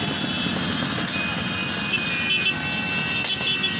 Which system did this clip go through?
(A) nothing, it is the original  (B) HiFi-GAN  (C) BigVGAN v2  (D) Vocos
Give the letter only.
A